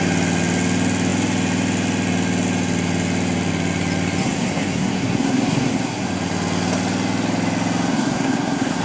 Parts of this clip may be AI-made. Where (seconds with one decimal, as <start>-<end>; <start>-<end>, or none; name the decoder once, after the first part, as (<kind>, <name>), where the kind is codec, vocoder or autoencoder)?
4.2-6.1 (codec, SNAC); 7.9-8.8